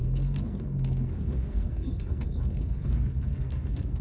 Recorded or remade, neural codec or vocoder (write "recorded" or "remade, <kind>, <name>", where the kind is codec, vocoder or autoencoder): remade, codec, SNAC